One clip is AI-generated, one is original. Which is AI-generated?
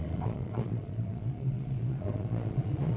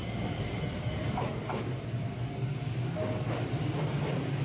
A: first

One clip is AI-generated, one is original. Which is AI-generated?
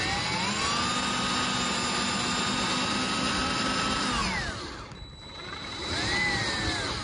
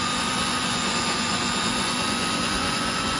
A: second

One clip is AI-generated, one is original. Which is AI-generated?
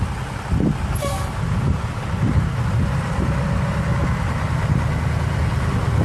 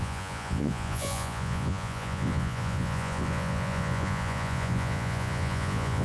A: second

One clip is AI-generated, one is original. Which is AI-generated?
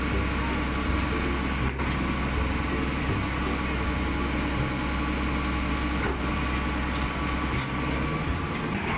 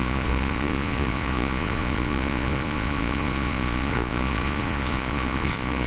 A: second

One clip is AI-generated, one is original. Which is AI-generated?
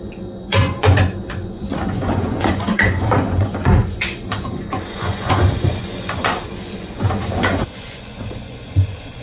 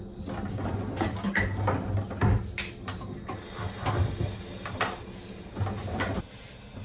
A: first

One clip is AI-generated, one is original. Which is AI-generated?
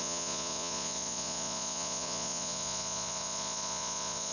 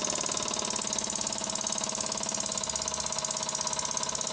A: first